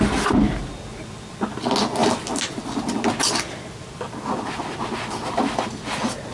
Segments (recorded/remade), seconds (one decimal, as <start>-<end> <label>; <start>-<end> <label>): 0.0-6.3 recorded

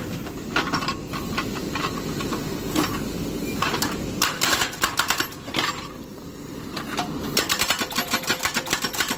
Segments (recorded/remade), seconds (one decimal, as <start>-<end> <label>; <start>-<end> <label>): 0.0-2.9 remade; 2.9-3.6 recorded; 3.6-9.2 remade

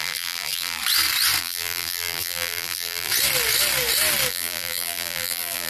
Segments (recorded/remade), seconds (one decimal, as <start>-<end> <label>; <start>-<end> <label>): 0.0-0.8 remade; 0.8-1.4 recorded; 1.4-3.1 remade; 3.1-4.3 recorded; 4.3-5.7 remade